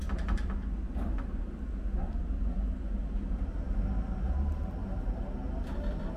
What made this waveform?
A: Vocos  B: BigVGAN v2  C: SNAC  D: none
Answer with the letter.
D